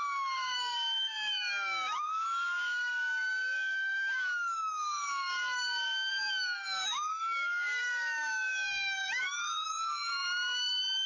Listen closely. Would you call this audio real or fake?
fake